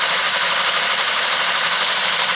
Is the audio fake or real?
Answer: fake